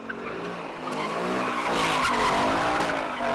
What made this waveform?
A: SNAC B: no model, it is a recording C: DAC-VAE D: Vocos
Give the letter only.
B